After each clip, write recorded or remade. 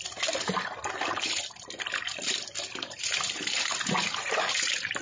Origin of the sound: remade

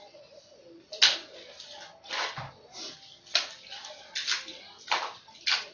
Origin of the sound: recorded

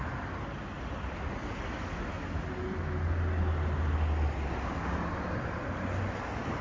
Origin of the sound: recorded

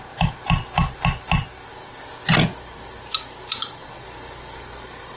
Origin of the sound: recorded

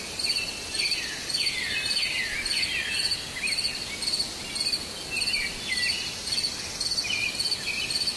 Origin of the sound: recorded